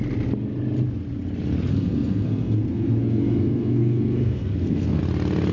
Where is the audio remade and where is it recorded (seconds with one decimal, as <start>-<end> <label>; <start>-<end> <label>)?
0.0-1.7 recorded; 1.7-5.0 remade; 5.0-5.5 recorded